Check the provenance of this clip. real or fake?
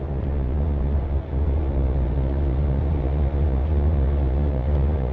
fake